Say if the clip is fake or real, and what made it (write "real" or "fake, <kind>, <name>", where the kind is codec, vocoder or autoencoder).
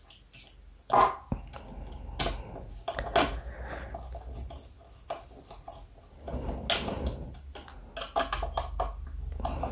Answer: real